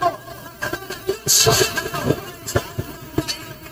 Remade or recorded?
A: recorded